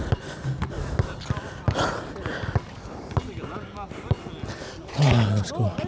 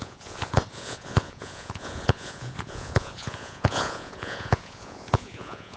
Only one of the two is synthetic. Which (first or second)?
second